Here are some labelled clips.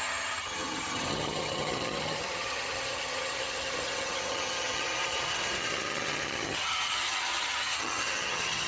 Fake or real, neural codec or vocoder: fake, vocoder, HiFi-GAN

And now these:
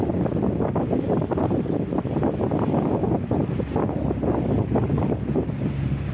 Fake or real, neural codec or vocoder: real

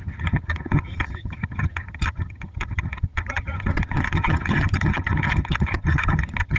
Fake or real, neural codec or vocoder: fake, vocoder, HiFi-GAN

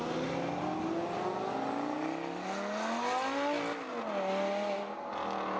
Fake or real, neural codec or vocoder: real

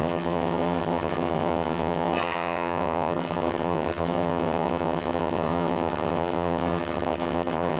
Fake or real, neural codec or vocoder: fake, vocoder, HiFi-GAN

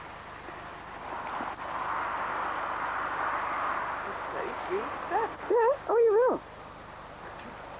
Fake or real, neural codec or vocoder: real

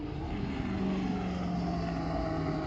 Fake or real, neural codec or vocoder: real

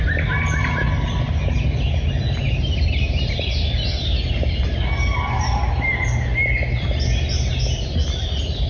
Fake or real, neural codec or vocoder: real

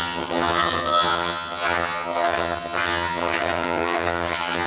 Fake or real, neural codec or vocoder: fake, vocoder, HiFi-GAN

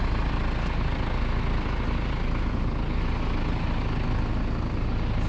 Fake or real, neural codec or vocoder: real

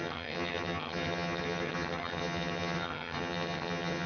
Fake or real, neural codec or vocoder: fake, vocoder, HiFi-GAN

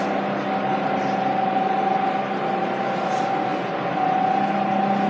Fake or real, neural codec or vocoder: real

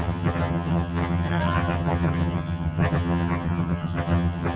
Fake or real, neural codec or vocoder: fake, vocoder, HiFi-GAN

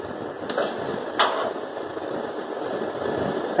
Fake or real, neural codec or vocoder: real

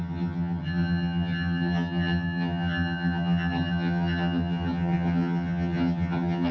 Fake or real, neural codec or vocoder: fake, vocoder, HiFi-GAN